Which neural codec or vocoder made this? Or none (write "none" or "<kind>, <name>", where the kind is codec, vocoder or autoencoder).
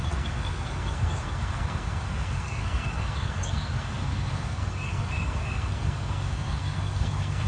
codec, SNAC